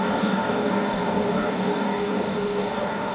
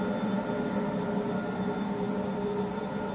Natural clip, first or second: second